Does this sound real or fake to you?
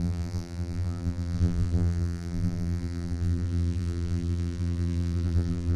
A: fake